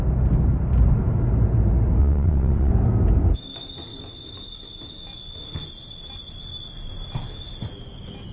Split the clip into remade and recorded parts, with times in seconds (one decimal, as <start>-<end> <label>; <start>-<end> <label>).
0.0-2.0 recorded; 2.0-2.7 remade; 2.7-8.3 recorded